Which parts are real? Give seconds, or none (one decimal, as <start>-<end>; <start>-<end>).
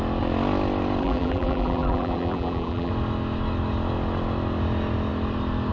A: 0.0-1.0; 2.9-5.7